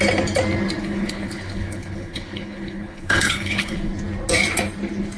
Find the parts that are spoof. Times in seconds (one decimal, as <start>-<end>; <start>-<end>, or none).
0.8-3.9